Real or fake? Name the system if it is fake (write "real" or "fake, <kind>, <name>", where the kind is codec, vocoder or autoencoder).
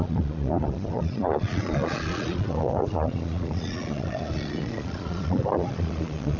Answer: fake, vocoder, Vocos